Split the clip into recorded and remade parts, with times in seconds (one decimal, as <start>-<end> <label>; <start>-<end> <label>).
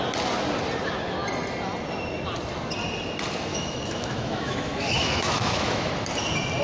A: 0.0-3.5 recorded; 3.5-5.9 remade; 5.9-6.6 recorded